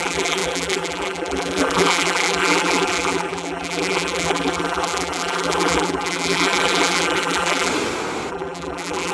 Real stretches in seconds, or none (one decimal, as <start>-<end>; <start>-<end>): 7.7-8.3